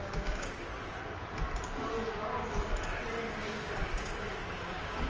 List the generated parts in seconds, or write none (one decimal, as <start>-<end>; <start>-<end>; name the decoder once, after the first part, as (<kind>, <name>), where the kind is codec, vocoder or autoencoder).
0.0-0.7 (codec, DAC); 3.3-5.1